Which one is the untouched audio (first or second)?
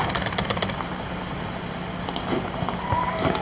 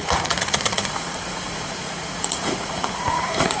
first